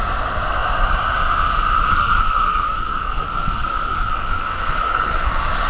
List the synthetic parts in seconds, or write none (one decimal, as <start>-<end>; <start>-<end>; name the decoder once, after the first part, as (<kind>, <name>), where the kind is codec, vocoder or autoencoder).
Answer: 1.9-5.3 (codec, SNAC)